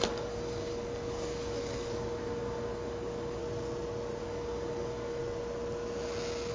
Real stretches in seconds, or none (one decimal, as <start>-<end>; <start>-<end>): 3.4-4.2; 5.2-6.5